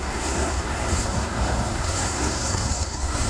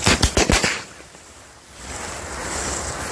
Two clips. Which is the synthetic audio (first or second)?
first